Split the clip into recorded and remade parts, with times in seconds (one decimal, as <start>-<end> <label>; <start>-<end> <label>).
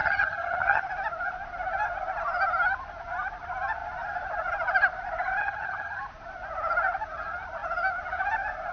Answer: 0.0-0.8 remade; 0.8-5.4 recorded; 5.4-6.0 remade; 6.0-8.7 recorded